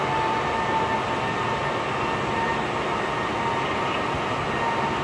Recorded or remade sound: recorded